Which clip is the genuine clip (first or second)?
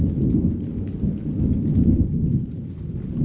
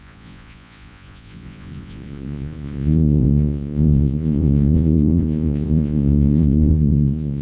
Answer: first